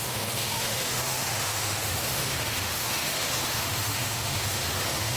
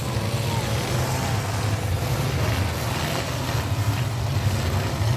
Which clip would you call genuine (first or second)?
second